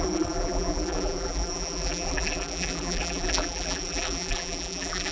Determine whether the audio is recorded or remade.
remade